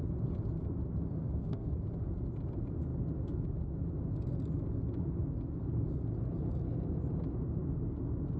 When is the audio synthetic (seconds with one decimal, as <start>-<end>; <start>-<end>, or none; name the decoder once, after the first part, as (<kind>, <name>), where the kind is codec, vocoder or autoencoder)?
1.2-1.8 (codec, SNAC)